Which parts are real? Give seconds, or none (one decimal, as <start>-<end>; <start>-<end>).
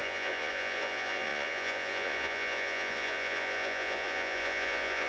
none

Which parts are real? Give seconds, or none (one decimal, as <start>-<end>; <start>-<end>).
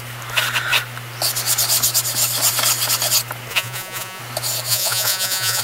0.0-3.5; 4.2-4.7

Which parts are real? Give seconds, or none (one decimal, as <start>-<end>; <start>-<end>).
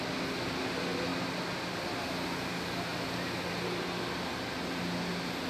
0.0-5.5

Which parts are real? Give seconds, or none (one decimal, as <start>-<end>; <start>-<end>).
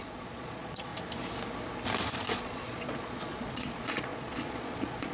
0.9-2.3